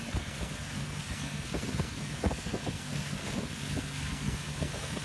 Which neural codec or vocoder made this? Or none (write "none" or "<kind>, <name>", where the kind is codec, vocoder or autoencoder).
codec, SNAC